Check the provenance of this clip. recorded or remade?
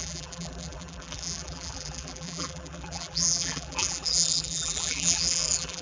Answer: remade